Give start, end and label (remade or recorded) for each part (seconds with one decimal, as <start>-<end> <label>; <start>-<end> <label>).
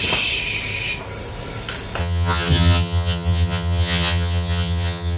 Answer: 0.0-2.0 recorded; 2.0-5.2 remade